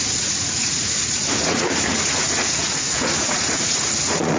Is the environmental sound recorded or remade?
remade